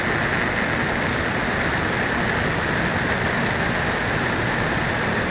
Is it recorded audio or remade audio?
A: recorded